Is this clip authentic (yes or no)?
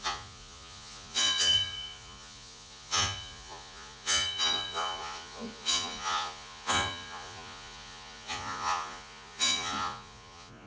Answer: no